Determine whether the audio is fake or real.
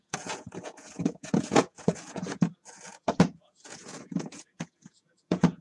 fake